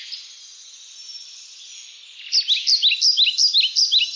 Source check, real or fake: real